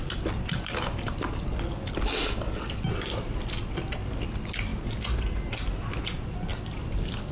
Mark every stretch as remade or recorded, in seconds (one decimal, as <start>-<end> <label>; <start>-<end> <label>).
0.0-7.3 recorded

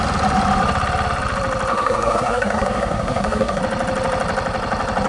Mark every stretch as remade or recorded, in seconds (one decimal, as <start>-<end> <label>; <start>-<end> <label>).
0.0-1.7 recorded; 1.7-3.6 remade; 3.6-5.1 recorded